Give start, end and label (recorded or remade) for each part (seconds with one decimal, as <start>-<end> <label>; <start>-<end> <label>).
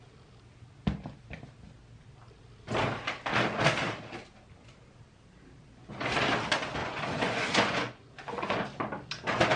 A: 0.0-6.8 recorded; 6.8-8.6 remade; 8.6-9.6 recorded